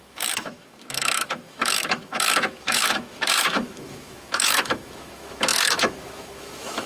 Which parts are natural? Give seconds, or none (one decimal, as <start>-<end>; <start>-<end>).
none